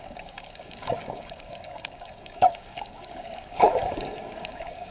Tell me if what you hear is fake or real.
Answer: fake